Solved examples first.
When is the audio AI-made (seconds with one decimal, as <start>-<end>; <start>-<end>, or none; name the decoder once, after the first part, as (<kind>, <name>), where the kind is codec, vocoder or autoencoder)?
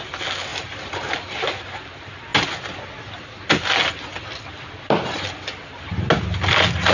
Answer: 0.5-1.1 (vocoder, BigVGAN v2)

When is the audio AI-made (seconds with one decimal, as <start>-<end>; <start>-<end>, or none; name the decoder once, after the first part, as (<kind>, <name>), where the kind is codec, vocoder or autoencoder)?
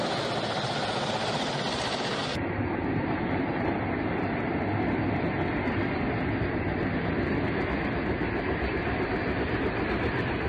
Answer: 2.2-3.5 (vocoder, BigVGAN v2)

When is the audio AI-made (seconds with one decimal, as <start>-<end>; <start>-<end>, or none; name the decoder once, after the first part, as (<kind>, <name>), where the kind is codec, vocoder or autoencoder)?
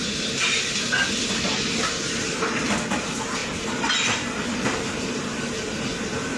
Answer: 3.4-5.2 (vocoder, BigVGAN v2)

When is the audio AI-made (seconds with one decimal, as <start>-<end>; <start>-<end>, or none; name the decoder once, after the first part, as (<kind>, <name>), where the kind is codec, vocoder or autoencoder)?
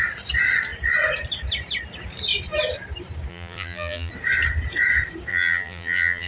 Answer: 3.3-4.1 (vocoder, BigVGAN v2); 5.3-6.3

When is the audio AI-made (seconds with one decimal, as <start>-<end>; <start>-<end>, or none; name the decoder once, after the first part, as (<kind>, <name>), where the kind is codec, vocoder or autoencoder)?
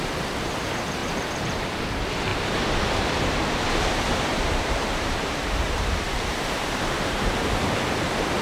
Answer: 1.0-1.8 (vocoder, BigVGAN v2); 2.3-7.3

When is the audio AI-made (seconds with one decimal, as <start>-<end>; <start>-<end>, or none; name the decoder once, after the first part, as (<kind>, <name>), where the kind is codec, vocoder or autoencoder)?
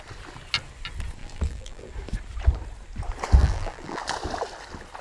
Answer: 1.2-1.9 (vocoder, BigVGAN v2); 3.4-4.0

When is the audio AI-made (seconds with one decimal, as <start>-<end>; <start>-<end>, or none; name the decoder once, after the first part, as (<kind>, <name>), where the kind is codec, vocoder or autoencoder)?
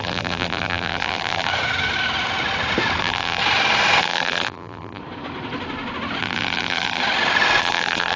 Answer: 0.0-1.5 (vocoder, BigVGAN v2); 3.0-3.4; 4.0-5.0; 6.2-7.0; 7.6-8.2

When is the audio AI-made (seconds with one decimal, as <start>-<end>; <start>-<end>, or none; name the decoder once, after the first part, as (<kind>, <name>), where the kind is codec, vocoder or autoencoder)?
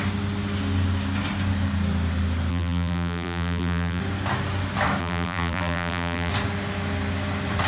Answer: 2.5-4.0 (vocoder, BigVGAN v2); 5.0-6.3